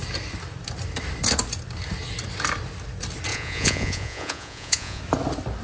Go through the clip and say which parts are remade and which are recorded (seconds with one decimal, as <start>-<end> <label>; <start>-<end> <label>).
0.0-3.3 recorded; 3.3-5.0 remade; 5.0-5.6 recorded